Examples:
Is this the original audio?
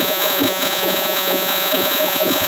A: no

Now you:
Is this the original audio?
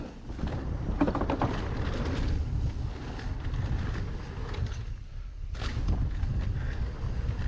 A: yes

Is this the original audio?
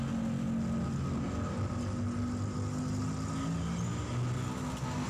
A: yes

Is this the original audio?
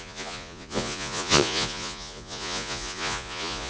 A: no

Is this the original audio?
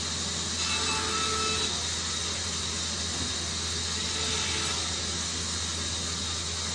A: yes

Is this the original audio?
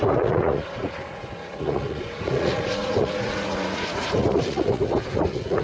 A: no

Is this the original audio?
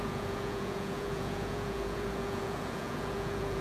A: no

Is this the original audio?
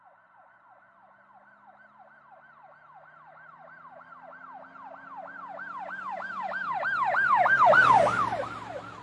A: yes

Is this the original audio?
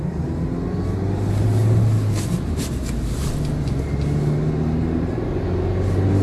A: yes